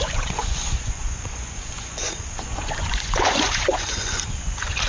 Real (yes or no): no